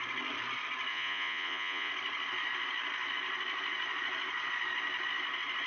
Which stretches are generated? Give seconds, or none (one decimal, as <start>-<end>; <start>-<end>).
0.9-1.9

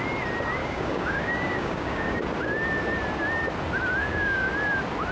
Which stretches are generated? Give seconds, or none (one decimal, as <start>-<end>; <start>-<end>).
0.6-2.2; 4.0-4.5

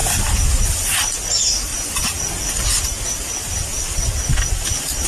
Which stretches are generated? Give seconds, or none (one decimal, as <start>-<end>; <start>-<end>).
0.0-0.6; 1.7-2.7

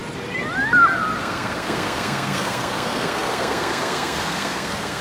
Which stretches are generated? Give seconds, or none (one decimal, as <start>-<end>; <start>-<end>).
1.2-5.0